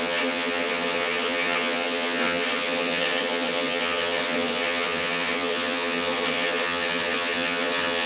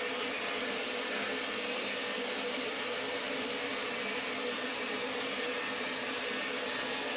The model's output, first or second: first